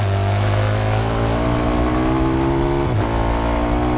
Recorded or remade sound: recorded